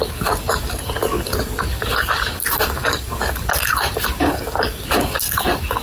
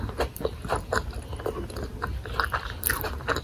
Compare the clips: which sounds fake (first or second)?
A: first